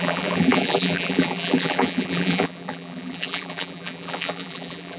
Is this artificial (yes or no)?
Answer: yes